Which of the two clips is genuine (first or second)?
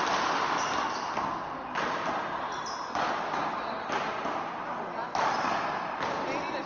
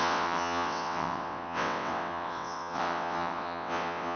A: first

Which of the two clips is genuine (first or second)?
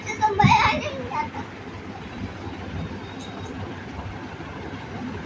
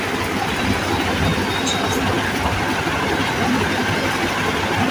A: second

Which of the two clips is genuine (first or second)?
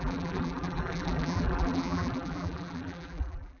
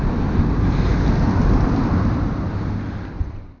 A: second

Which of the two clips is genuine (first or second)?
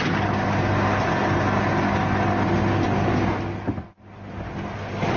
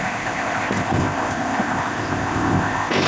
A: first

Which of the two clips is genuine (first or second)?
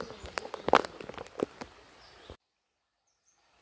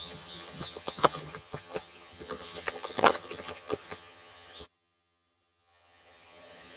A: first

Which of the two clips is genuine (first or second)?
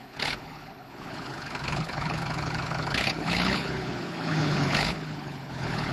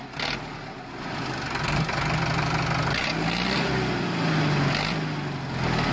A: second